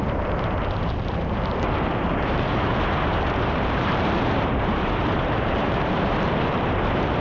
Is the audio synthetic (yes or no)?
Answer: yes